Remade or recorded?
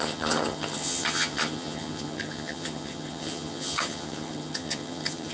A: remade